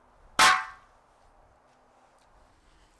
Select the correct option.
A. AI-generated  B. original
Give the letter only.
B